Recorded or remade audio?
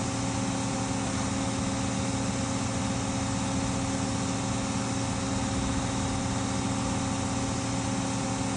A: recorded